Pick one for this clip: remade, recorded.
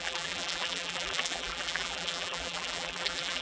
remade